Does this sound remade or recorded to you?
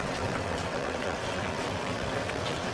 remade